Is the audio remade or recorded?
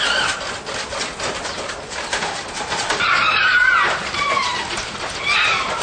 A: recorded